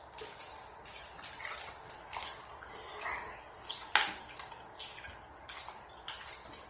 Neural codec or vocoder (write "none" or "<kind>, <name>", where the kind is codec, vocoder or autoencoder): none